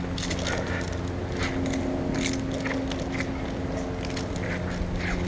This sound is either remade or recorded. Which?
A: recorded